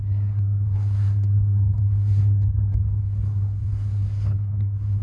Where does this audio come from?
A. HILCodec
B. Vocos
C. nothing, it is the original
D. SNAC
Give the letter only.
D